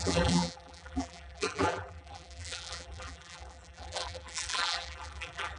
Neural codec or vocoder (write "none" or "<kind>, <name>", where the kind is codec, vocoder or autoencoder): vocoder, BigVGAN v2